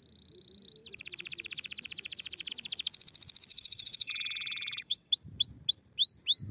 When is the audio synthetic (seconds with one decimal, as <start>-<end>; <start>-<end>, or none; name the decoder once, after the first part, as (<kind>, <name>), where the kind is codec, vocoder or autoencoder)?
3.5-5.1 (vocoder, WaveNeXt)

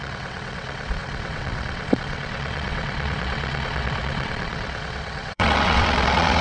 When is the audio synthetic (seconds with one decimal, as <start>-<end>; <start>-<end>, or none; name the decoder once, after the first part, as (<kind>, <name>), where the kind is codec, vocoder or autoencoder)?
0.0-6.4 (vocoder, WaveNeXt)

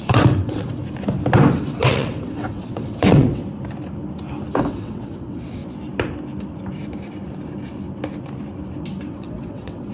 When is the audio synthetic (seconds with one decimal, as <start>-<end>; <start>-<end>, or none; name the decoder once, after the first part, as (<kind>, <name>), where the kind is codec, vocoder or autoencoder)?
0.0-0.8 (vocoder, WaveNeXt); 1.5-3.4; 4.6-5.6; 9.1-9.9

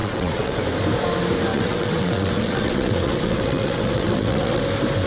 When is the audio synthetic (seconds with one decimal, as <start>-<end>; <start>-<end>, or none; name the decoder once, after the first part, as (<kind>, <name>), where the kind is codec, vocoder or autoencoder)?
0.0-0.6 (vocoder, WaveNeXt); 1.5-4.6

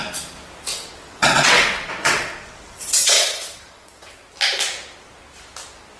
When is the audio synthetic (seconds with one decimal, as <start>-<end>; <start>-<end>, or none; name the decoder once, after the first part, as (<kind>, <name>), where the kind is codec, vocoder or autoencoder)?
0.7-4.2 (vocoder, WaveNeXt)